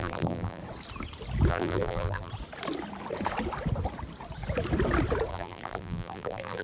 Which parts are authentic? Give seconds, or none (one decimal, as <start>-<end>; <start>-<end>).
0.6-1.5; 2.3-5.3